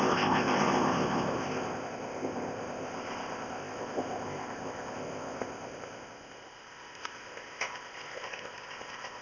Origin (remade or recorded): remade